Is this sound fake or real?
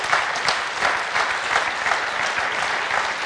real